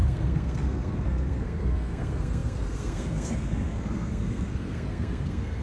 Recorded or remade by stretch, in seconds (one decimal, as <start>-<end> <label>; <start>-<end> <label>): 0.0-5.6 remade